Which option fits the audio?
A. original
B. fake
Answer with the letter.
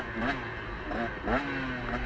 A